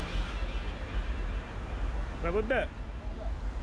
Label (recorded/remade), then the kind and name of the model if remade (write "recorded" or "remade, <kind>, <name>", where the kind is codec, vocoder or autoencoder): recorded